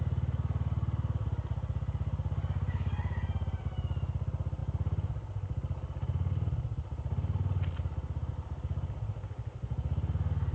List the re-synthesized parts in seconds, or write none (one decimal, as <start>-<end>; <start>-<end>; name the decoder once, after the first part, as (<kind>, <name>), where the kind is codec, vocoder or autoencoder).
none